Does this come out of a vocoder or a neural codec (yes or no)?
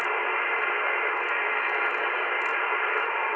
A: no